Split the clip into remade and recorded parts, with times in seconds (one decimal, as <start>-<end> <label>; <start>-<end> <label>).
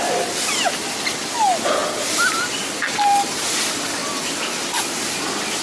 0.0-5.6 recorded